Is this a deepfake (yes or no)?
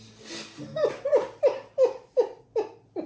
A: no